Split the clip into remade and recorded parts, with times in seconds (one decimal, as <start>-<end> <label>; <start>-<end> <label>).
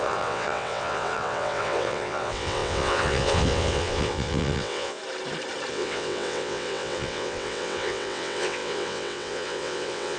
0.0-5.0 remade; 5.0-5.7 recorded; 5.7-10.2 remade